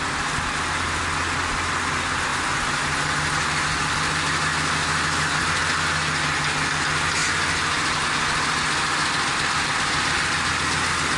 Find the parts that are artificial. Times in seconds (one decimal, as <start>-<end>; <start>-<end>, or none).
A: none